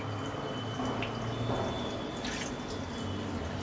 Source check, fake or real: real